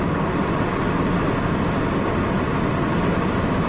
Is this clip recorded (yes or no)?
yes